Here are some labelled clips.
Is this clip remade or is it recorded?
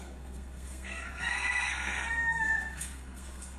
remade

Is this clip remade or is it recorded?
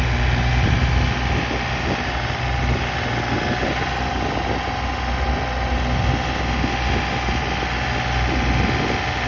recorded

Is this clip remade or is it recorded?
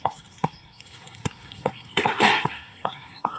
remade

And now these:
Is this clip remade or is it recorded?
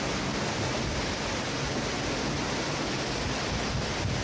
recorded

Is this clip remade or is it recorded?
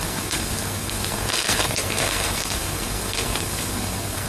remade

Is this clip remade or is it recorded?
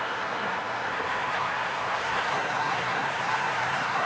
remade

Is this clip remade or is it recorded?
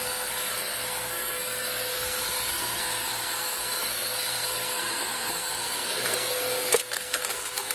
remade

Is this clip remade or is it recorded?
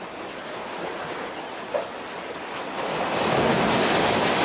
recorded